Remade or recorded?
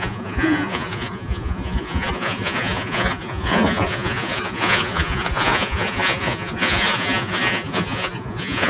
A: remade